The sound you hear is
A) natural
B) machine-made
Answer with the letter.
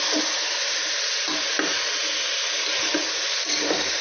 A